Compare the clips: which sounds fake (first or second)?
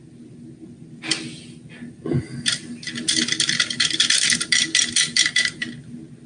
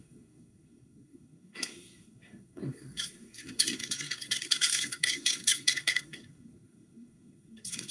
second